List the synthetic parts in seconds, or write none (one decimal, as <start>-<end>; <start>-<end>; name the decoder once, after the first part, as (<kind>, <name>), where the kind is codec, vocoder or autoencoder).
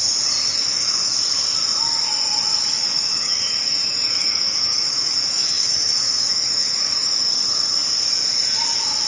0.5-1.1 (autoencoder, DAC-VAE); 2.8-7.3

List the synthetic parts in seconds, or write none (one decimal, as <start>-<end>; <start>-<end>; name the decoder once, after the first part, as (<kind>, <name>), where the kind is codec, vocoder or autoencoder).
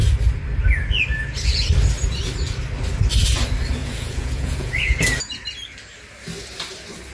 3.8-5.0 (vocoder, Vocos)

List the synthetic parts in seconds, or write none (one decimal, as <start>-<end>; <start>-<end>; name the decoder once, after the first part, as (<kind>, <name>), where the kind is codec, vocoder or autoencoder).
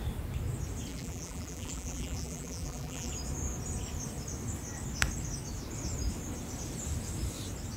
0.9-3.1 (vocoder, BigVGAN v2)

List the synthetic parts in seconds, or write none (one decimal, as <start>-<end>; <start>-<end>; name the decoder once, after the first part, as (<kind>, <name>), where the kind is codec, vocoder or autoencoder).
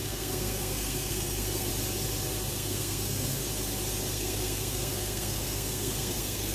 0.0-1.7 (codec, SNAC); 2.5-3.4; 4.1-6.5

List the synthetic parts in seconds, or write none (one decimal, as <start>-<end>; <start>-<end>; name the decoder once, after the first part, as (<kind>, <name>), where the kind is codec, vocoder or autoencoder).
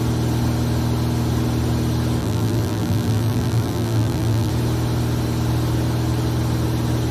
2.2-4.5 (vocoder, BigVGAN v2)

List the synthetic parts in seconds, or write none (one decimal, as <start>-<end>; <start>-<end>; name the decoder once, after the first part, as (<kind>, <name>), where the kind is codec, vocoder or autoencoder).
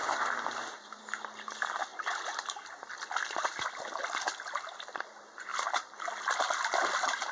0.0-1.0 (vocoder, BigVGAN v2); 1.9-2.9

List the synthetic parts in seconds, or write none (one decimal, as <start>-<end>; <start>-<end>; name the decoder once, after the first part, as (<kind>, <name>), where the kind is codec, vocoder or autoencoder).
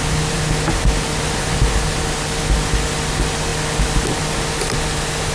none